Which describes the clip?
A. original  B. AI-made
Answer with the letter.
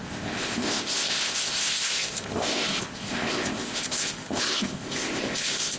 B